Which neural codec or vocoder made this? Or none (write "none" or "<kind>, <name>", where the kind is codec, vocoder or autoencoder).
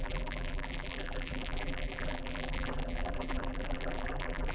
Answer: vocoder, BigVGAN v2